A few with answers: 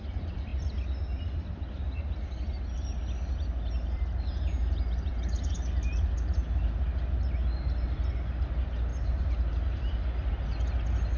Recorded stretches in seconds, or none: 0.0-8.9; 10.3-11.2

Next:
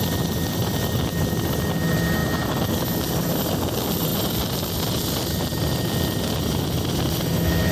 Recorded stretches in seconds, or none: 0.0-7.7